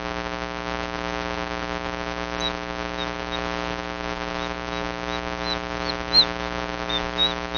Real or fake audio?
real